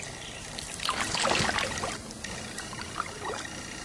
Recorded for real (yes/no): no